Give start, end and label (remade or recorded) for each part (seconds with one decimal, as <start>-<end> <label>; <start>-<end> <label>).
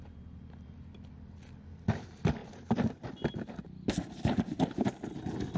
0.0-5.6 recorded